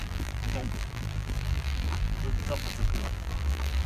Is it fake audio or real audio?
fake